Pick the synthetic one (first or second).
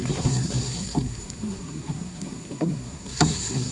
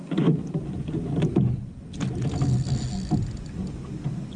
first